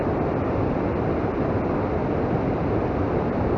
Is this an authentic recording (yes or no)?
yes